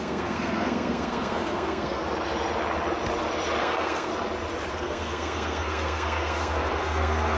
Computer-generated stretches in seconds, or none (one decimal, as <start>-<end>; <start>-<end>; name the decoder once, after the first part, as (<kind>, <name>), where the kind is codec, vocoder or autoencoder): 0.0-2.0 (codec, SNAC); 3.6-4.1; 4.7-7.4